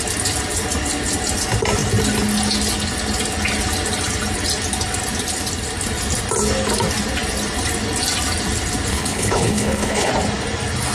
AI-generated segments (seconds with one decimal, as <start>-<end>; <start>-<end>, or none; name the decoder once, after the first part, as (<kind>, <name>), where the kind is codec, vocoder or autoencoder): 8.9-10.1 (codec, HILCodec)